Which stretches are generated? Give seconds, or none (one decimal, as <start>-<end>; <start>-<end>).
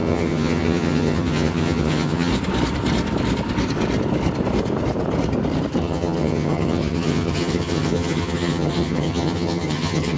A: 0.0-2.3; 5.8-10.2